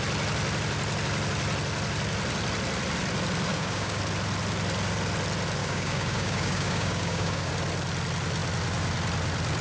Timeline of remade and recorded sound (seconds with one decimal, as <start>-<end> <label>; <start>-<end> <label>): 0.0-3.5 recorded; 3.5-4.0 remade; 4.0-5.6 recorded; 5.6-7.5 remade; 7.5-9.6 recorded